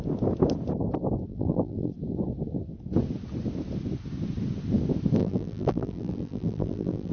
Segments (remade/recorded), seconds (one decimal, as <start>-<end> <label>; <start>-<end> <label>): 0.0-1.3 recorded; 1.3-1.9 remade; 1.9-5.2 recorded; 5.2-7.1 remade